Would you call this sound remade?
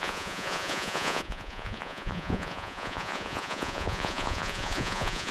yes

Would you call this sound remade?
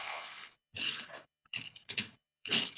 yes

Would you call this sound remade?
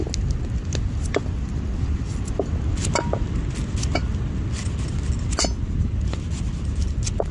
no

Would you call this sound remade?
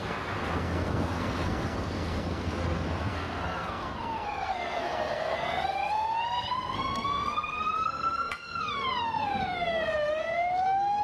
yes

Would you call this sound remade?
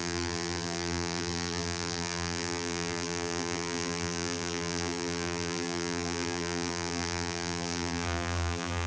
yes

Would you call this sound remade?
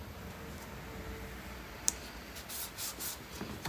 no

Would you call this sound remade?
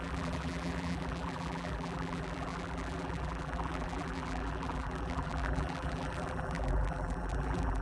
yes